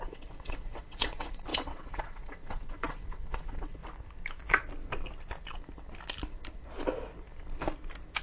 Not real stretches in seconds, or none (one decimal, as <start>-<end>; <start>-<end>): 0.0-3.8